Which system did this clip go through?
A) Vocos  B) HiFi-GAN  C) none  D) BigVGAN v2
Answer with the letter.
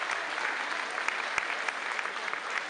C